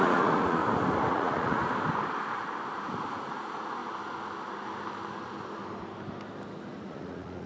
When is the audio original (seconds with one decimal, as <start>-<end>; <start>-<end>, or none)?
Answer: 0.6-1.1; 1.6-2.7; 3.8-6.8